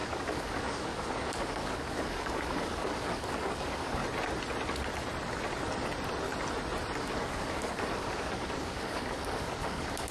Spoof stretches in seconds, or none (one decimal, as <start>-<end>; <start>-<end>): 0.0-4.0; 7.0-10.1